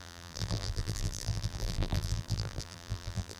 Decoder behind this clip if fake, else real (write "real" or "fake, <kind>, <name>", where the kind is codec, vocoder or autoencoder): fake, vocoder, BigVGAN v2